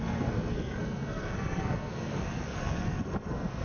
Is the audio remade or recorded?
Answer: remade